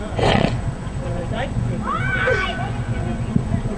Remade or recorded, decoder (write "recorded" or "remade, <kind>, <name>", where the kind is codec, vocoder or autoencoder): remade, vocoder, Vocos